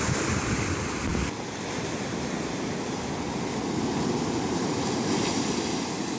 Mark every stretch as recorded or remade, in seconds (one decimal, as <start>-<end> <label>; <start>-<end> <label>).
0.0-6.2 recorded